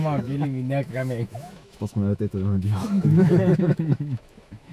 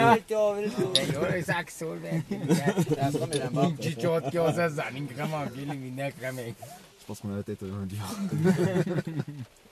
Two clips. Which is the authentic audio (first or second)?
second